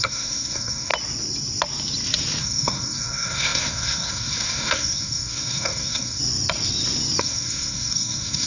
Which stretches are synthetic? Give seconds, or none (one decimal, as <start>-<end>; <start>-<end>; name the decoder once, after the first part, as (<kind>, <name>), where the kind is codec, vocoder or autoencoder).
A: 0.0-0.9 (codec, SNAC); 2.4-6.2; 7.2-8.5